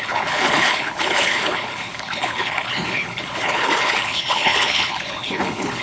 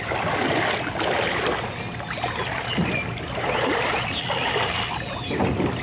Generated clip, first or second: first